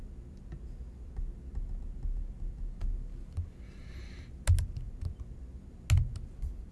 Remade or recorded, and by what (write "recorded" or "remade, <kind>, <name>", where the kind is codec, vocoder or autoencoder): recorded